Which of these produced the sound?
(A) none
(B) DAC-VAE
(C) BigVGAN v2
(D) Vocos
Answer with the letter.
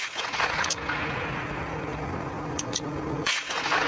D